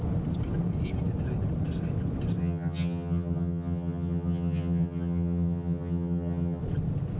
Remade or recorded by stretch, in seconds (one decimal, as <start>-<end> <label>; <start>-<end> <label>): 0.0-2.4 recorded; 2.4-6.6 remade; 6.6-7.2 recorded